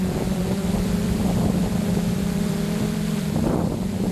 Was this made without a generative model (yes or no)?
no